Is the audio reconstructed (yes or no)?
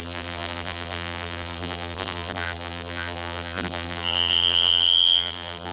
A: yes